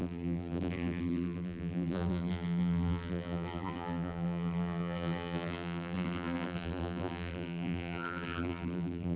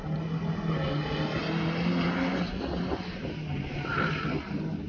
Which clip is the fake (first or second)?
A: first